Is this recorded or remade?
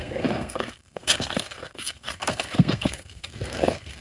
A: remade